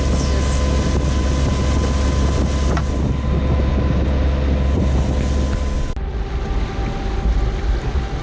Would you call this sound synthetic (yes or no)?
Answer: no